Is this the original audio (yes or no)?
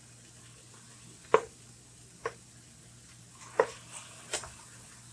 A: yes